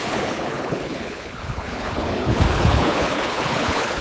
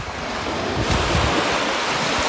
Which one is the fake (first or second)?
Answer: first